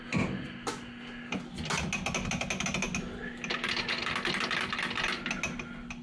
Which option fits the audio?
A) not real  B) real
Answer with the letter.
B